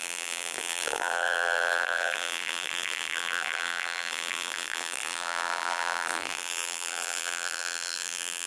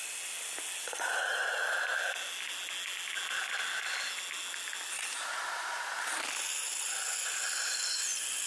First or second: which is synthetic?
first